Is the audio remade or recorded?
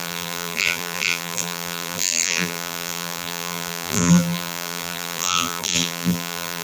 remade